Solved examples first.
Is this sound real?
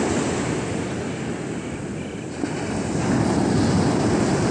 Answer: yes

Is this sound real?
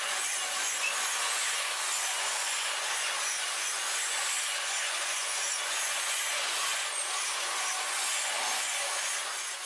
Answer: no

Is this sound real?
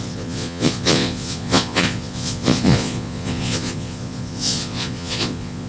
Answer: no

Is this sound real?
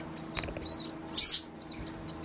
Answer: yes